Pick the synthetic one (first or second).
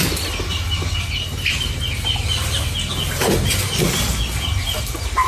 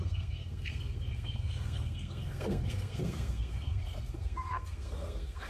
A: second